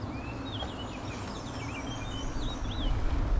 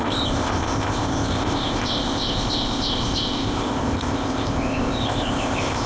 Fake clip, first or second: second